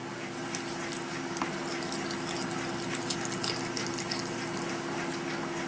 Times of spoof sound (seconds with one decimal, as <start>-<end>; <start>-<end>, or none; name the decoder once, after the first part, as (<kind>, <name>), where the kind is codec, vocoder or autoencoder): none